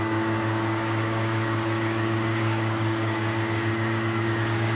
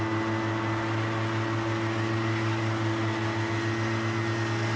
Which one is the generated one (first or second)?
first